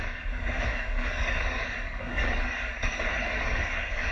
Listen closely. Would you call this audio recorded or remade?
remade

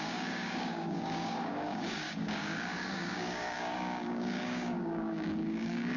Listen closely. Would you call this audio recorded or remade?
remade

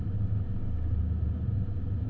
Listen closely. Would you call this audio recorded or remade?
recorded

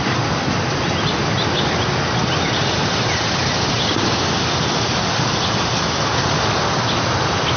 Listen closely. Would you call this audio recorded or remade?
recorded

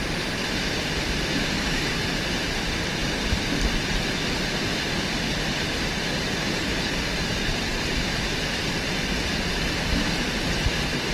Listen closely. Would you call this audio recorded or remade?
recorded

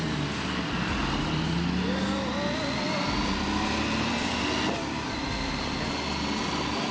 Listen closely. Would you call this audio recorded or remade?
recorded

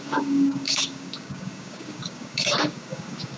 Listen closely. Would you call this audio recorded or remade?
remade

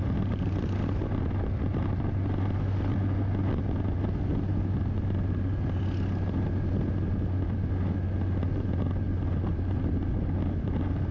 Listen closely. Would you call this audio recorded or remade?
recorded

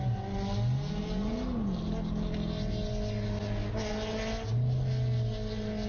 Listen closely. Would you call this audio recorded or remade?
recorded